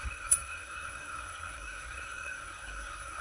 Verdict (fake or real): fake